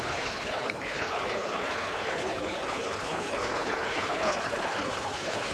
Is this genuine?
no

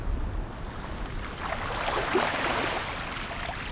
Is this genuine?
yes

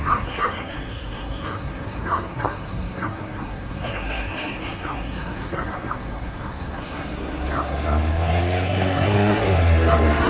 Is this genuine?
no